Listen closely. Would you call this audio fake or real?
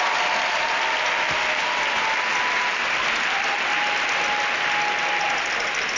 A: real